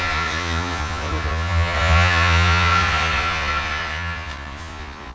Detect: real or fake fake